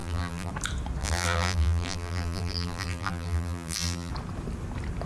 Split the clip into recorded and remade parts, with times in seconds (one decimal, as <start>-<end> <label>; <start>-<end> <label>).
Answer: 0.0-0.5 remade; 0.5-1.0 recorded; 1.0-4.1 remade; 4.1-5.1 recorded